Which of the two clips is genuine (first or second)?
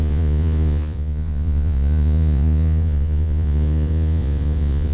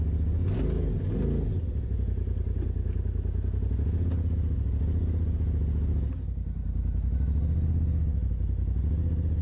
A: second